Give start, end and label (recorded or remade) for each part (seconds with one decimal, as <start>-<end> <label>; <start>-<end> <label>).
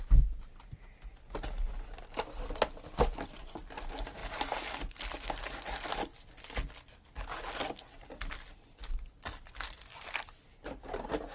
0.0-11.3 recorded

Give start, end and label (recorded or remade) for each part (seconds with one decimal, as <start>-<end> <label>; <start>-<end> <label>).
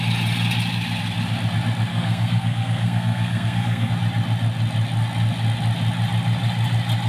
0.0-1.9 recorded; 1.9-3.9 remade; 3.9-7.1 recorded